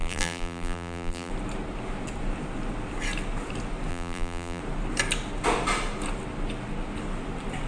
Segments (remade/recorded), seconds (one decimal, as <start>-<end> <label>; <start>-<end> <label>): 0.0-1.3 remade; 1.3-3.9 recorded; 3.9-4.6 remade; 4.6-7.7 recorded